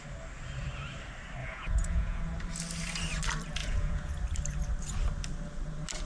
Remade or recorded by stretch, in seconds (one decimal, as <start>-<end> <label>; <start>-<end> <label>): 0.0-1.4 recorded; 1.4-2.2 remade; 2.2-3.6 recorded; 3.6-4.1 remade; 4.1-6.1 recorded